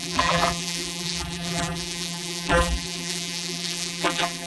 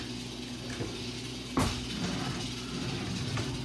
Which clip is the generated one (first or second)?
first